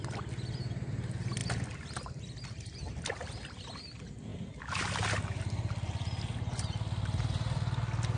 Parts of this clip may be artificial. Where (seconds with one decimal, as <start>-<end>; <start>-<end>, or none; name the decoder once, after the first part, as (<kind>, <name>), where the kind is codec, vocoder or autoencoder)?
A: none